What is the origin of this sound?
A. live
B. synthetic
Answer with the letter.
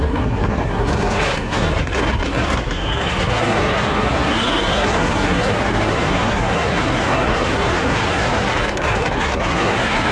B